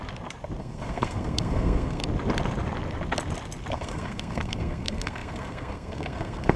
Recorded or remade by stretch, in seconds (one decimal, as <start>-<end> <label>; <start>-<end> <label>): 0.0-0.6 recorded; 0.6-2.0 remade; 2.0-3.7 recorded; 3.7-6.6 remade

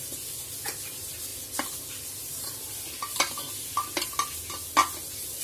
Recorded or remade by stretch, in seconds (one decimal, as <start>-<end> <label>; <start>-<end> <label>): 0.0-5.4 recorded

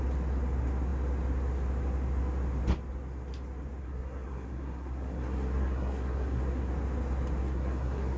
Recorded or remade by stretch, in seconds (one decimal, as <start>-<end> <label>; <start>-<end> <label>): 0.0-3.8 recorded; 3.8-6.7 remade; 6.7-7.4 recorded; 7.4-8.2 remade

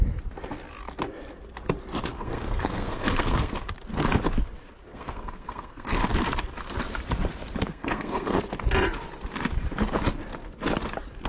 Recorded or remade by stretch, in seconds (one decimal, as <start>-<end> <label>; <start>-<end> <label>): 0.0-2.1 recorded; 2.1-3.5 remade; 3.5-4.9 recorded; 4.9-6.0 remade; 6.0-7.7 recorded; 7.7-8.4 remade; 8.4-11.3 recorded

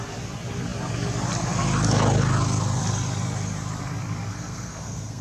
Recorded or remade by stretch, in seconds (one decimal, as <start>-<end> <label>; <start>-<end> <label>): 0.0-4.3 recorded; 4.3-5.2 remade

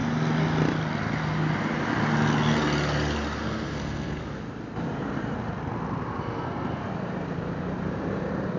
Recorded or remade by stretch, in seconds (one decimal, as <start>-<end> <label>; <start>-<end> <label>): 0.0-3.4 recorded; 3.4-4.2 remade; 4.2-6.2 recorded; 6.2-6.8 remade; 6.8-8.6 recorded

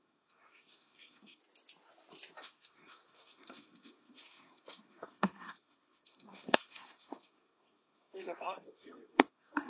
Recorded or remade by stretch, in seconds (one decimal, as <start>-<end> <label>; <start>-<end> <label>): 0.0-1.4 remade; 1.4-2.4 recorded; 2.4-9.7 remade

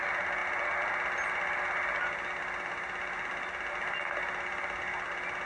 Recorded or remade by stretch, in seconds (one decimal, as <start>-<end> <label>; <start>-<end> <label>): 0.0-5.5 recorded